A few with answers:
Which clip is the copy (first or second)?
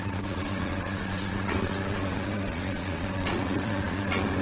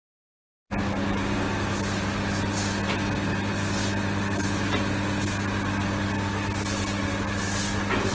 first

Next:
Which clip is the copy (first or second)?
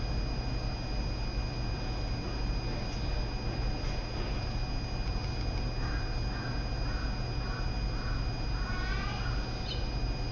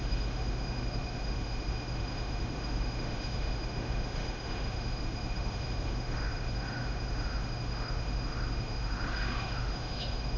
second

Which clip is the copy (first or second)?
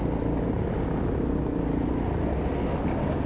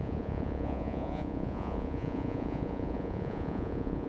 second